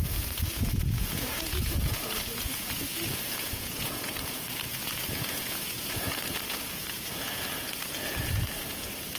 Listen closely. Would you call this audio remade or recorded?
remade